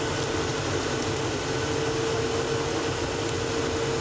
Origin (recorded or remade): recorded